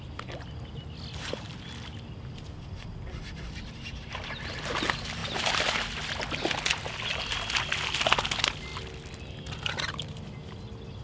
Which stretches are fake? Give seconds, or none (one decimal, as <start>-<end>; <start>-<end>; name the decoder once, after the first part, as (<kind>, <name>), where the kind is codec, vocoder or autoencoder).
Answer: none

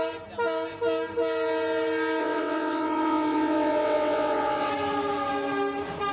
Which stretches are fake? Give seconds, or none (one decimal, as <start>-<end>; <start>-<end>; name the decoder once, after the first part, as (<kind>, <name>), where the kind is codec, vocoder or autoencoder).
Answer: 2.2-4.7 (vocoder, WaveNeXt)

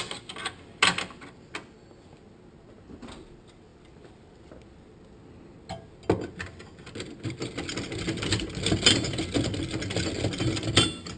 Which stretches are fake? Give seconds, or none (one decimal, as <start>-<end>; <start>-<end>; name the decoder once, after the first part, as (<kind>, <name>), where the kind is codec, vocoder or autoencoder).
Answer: none

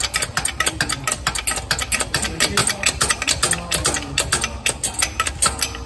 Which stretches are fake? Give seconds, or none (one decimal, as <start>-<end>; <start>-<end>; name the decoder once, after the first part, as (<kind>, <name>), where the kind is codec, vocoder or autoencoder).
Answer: none

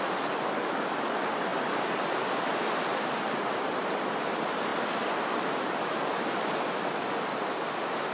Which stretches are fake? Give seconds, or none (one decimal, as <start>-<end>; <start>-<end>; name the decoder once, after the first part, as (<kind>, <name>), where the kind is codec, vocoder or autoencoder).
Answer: none

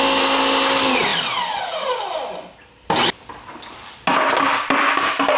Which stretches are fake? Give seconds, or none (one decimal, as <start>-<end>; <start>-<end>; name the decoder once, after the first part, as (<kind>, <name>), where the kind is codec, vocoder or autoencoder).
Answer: none

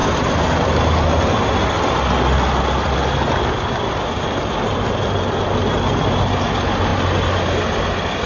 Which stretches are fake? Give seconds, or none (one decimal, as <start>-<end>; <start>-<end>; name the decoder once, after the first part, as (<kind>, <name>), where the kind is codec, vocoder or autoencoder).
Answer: none

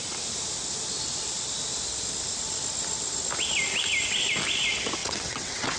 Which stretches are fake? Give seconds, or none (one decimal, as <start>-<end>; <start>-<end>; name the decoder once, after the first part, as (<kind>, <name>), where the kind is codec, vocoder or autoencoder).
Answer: 5.0-5.8 (vocoder, WaveNeXt)